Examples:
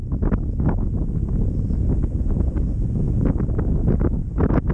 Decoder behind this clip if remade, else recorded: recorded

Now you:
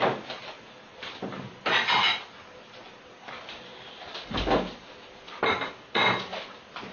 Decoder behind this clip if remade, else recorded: recorded